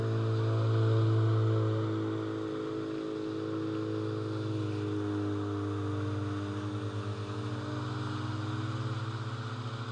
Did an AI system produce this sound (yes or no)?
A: no